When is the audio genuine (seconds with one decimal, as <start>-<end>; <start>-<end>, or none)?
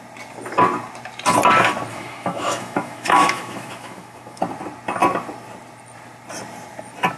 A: 0.0-1.9; 4.4-7.2